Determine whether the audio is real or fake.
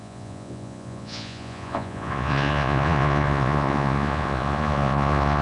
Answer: fake